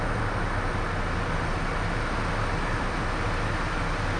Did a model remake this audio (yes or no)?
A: no